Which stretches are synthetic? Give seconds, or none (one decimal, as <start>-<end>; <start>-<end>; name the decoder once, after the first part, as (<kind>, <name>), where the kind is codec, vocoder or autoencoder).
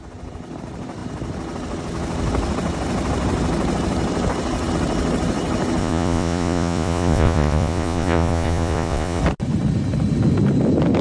5.8-9.2 (vocoder, Vocos)